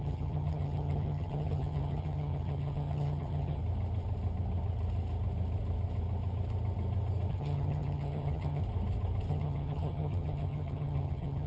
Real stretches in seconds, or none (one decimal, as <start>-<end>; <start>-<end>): 3.6-7.3; 8.6-9.3